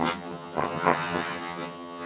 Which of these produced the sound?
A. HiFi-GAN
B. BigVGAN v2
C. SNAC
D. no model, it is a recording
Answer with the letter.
A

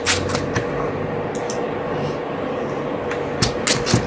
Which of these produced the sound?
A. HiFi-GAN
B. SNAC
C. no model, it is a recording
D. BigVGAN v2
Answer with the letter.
C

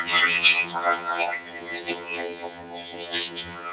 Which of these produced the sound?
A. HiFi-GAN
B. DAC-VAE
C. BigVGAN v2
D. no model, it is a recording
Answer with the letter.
A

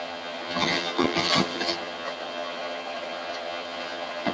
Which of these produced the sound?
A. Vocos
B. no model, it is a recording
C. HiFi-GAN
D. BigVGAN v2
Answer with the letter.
C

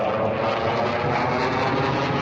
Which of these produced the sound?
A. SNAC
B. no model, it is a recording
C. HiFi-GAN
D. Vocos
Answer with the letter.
B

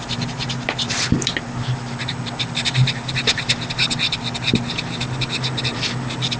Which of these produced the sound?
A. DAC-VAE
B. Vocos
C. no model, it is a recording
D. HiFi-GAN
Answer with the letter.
C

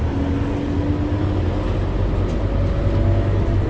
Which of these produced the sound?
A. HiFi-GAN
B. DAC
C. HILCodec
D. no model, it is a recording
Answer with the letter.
D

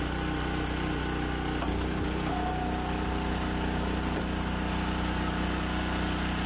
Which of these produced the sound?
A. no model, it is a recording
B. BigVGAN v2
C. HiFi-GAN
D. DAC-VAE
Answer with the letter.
A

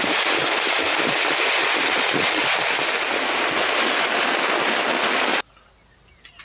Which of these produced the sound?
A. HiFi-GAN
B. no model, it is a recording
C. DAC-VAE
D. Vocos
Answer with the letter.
B